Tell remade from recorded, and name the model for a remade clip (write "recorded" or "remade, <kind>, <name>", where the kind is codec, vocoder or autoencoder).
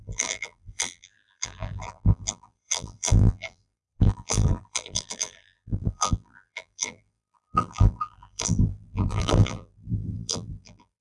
remade, vocoder, BigVGAN v2